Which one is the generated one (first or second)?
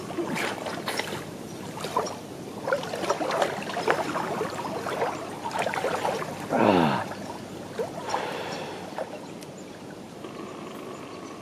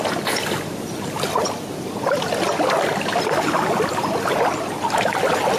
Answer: first